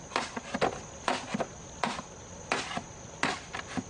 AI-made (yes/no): no